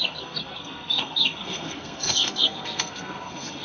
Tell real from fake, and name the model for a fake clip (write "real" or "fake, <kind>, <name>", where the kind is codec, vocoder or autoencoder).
fake, codec, SNAC